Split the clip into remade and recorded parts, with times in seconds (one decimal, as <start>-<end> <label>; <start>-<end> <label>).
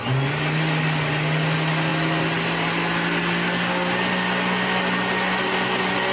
0.0-6.1 recorded